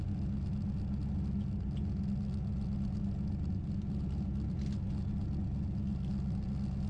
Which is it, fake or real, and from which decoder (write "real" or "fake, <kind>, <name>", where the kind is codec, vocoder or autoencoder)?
real